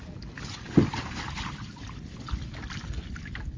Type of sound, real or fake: real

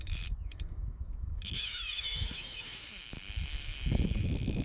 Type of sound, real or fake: fake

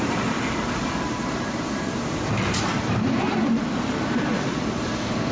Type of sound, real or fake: fake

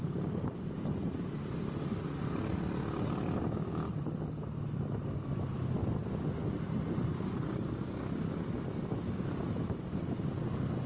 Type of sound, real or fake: real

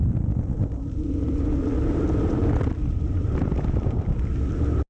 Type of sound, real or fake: fake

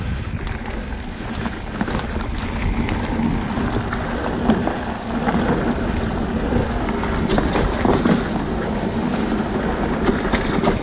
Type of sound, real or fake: real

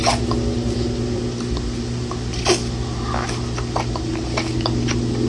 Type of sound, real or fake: real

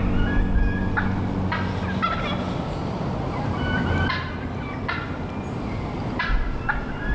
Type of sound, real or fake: real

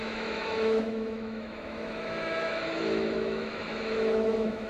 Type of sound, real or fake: fake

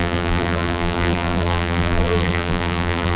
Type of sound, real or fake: fake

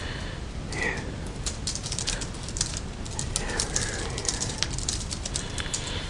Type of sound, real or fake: fake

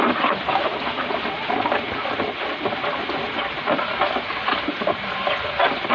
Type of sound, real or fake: real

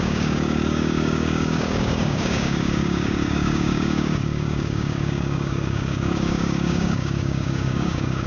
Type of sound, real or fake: fake